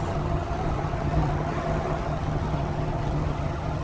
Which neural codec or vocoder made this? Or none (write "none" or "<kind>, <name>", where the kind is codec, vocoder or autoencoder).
vocoder, HiFi-GAN